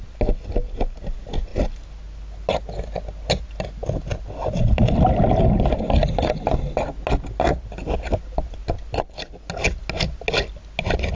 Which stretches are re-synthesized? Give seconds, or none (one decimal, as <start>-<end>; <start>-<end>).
none